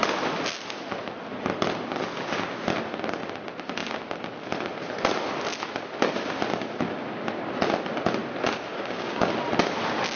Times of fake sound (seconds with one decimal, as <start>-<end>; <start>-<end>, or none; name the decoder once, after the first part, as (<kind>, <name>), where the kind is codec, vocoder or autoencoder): 8.7-9.3 (codec, DAC)